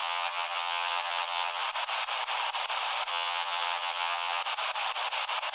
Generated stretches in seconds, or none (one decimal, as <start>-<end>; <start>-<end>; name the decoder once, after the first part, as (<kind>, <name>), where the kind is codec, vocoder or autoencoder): 0.0-1.6 (vocoder, HiFi-GAN); 3.1-4.4